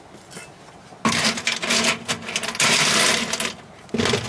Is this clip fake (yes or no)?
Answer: no